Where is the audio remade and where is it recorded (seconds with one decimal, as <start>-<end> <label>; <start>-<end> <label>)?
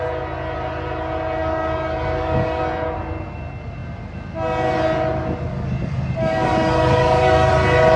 0.0-1.4 recorded; 1.4-2.6 remade; 2.6-5.5 recorded; 5.5-7.5 remade; 7.5-8.0 recorded